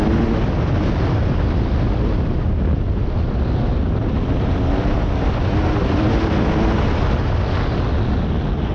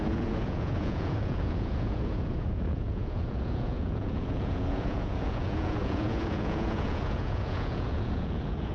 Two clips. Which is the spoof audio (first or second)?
second